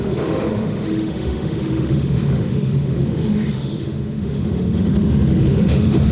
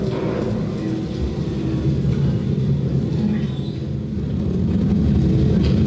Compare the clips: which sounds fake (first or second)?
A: first